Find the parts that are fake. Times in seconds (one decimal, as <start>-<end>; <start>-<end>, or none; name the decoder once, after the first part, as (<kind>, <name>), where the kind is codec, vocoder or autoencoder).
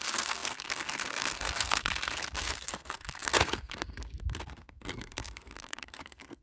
0.0-6.4 (codec, SNAC)